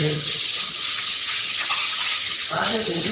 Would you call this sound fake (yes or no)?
yes